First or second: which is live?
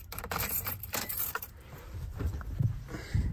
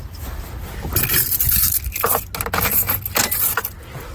second